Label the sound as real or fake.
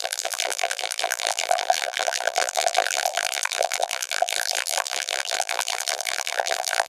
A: fake